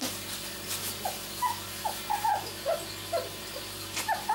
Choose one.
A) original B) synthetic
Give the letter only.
A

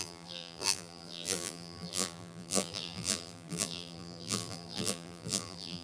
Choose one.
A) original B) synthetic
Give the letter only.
B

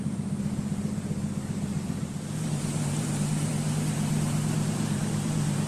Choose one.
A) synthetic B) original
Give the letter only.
A